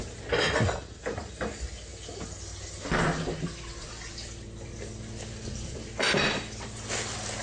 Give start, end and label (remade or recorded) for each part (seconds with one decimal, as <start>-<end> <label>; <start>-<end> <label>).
0.0-7.4 recorded